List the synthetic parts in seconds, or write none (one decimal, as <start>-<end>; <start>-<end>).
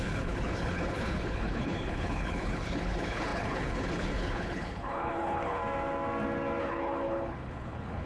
0.0-5.6; 6.6-8.1